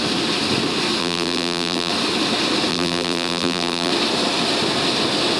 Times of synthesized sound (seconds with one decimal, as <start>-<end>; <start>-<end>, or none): 1.0-1.9; 2.7-3.9

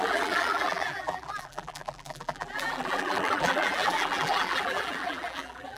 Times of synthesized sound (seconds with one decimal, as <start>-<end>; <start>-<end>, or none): 0.0-5.8

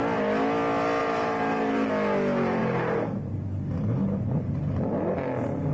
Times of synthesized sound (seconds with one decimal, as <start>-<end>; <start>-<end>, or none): 1.0-1.9; 2.6-3.3

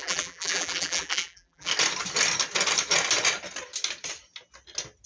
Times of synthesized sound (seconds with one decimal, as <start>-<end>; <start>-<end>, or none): 0.0-1.7

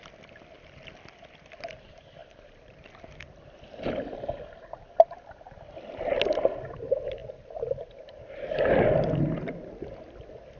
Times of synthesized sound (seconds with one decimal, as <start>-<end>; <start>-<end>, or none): 2.2-6.8

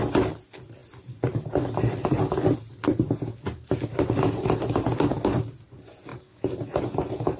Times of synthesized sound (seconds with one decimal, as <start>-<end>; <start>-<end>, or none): 0.8-4.8

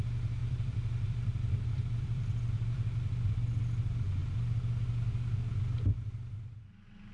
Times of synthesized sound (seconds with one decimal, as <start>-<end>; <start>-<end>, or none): 0.4-3.6

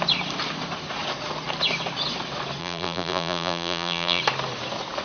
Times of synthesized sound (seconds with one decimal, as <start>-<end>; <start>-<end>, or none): 2.6-4.2